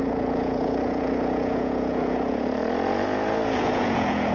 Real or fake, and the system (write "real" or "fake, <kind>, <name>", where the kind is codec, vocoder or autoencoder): fake, vocoder, Vocos